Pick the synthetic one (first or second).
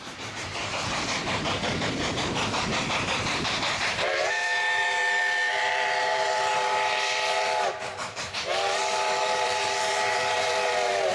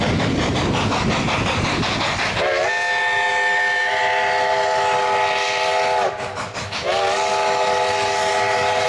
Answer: first